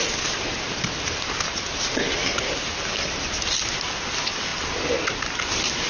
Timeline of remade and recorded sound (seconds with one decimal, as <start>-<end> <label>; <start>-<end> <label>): 0.0-5.9 recorded